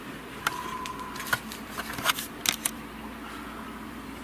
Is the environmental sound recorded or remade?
recorded